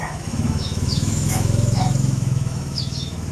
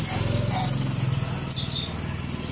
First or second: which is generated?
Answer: first